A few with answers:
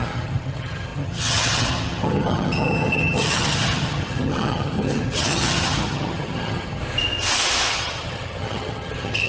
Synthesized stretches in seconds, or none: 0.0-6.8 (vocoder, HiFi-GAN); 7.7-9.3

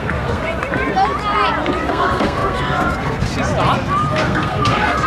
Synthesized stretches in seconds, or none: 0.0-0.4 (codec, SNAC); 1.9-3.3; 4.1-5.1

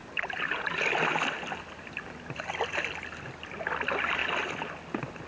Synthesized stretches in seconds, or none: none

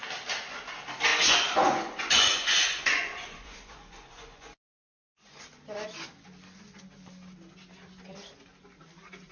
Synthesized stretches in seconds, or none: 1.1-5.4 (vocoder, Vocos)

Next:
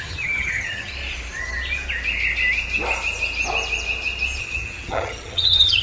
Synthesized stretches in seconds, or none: 0.0-0.9 (vocoder, HiFi-GAN); 4.4-5.8